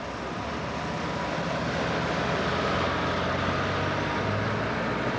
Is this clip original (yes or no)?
yes